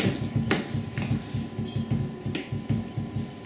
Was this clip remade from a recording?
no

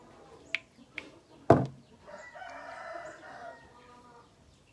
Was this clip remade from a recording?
no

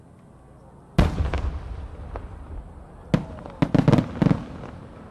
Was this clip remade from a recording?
no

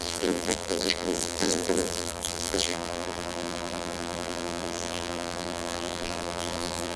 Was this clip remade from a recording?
yes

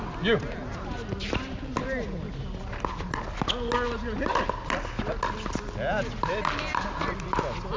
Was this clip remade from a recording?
no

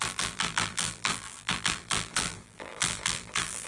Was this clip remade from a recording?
yes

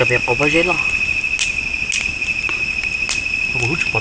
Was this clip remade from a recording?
no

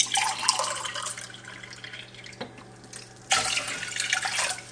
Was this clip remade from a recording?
no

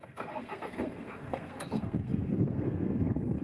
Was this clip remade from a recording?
yes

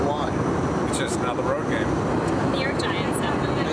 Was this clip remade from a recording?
no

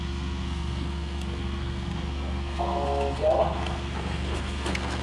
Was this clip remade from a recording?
yes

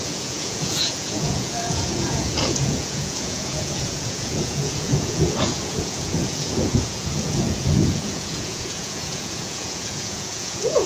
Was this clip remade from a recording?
yes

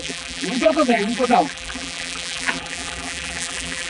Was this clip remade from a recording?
yes